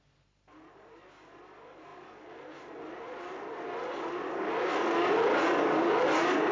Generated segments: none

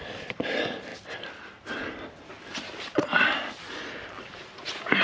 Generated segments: none

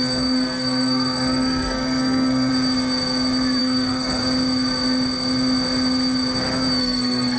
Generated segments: 0.0-2.5 (codec, SNAC); 3.6-4.2; 6.8-7.4

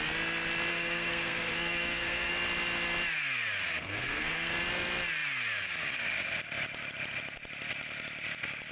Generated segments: 0.7-2.3 (codec, SNAC); 3.8-4.5

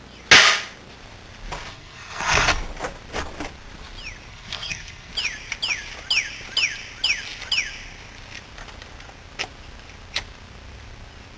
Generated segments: 1.7-2.6 (codec, SNAC); 4.3-5.1

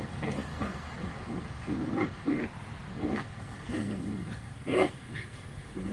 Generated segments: 0.0-2.4 (codec, SNAC); 2.9-5.9

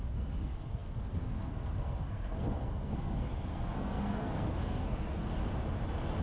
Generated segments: 0.0-5.3 (codec, SNAC)